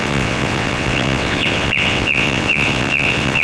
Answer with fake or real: fake